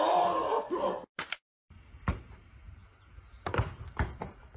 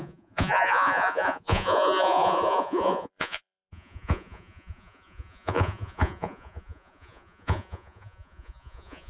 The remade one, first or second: second